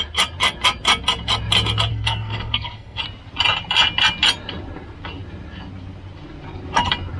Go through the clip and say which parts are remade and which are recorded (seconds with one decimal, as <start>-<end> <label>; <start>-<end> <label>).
0.0-1.9 recorded; 1.9-3.0 remade; 3.0-7.2 recorded